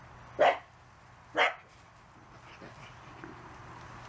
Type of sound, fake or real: real